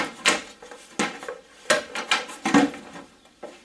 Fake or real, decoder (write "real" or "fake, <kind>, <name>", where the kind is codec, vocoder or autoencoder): real